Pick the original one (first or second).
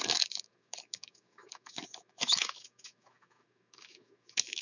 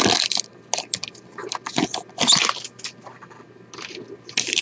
second